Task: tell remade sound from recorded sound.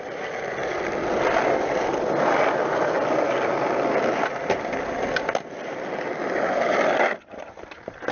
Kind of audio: recorded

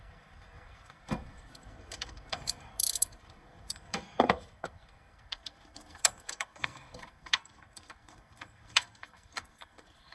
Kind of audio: remade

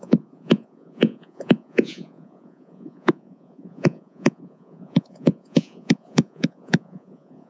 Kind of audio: remade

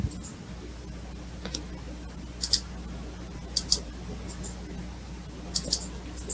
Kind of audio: recorded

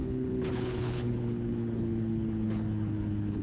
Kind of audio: remade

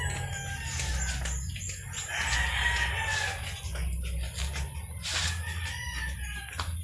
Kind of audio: recorded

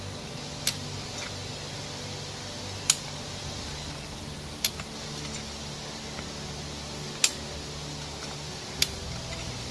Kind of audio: recorded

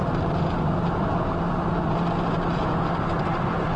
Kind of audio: recorded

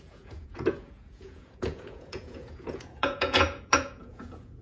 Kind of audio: remade